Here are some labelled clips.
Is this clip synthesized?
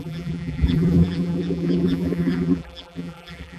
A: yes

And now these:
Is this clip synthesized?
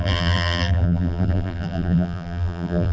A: yes